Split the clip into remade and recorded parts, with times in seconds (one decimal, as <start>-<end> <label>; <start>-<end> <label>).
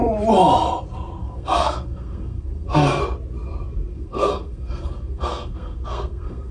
0.0-1.2 recorded; 1.2-3.0 remade; 3.0-3.9 recorded; 3.9-6.5 remade